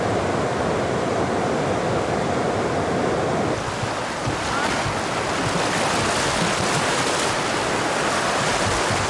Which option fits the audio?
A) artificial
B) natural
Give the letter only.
B